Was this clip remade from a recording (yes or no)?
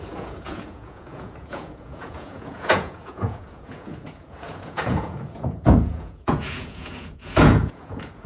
yes